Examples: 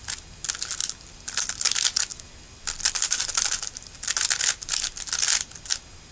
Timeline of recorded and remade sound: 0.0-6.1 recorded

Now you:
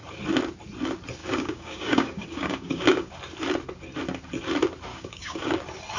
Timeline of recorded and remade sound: 0.0-1.2 recorded; 1.2-3.1 remade; 3.1-4.9 recorded; 4.9-5.6 remade; 5.6-6.0 recorded

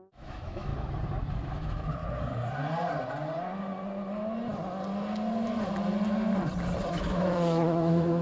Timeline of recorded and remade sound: 0.0-0.7 remade; 0.7-1.5 recorded; 1.5-2.0 remade; 2.0-6.9 recorded; 6.9-8.2 remade